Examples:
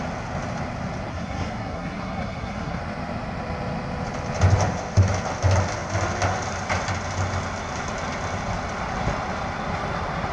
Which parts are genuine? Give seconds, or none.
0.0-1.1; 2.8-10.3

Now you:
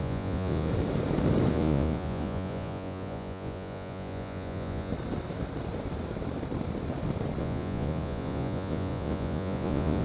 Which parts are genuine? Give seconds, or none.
0.7-1.5; 4.9-7.4

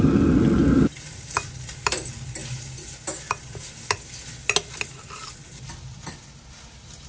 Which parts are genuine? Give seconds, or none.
0.0-7.1

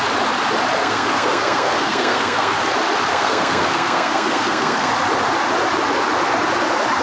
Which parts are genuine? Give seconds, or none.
0.0-0.8; 2.7-3.1; 4.9-7.0

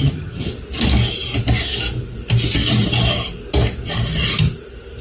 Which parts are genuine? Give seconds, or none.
0.5-5.0

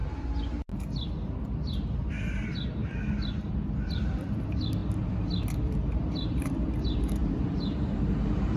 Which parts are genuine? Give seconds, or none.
0.0-2.0; 2.8-3.9; 4.8-5.7